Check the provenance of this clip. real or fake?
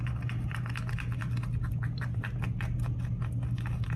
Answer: real